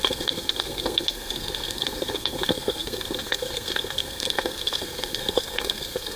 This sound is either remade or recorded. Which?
remade